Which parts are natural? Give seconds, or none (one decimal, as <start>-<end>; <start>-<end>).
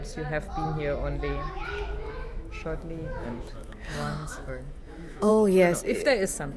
0.0-1.3; 5.3-6.6